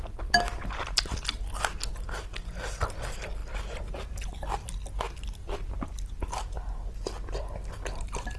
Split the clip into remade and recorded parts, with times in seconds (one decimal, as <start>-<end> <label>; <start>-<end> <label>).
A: 0.0-8.4 recorded